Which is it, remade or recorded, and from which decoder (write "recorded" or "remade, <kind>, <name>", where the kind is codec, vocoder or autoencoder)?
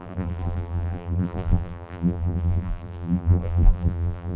remade, vocoder, BigVGAN v2